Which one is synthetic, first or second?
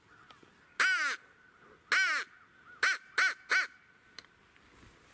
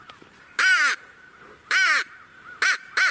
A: second